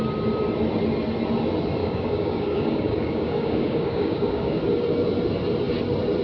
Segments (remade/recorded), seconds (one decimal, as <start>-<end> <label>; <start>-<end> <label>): 0.0-1.8 recorded; 1.8-4.6 remade; 4.6-6.2 recorded